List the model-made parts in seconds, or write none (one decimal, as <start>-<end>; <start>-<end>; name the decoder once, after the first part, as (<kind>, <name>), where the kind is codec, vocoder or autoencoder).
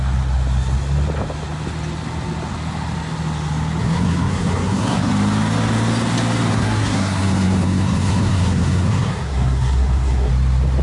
3.8-5.1 (codec, SNAC); 6.5-10.3